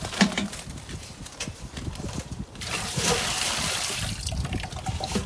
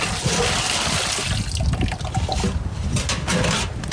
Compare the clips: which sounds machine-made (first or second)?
first